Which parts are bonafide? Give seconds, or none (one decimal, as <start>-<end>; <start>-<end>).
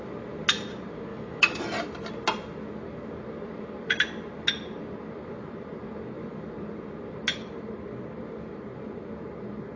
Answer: 0.0-1.1; 1.6-9.8